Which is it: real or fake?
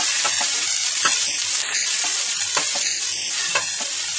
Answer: real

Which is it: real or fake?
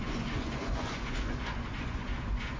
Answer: fake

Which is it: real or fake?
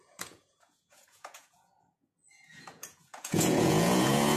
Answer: fake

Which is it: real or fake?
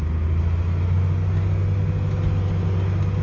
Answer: real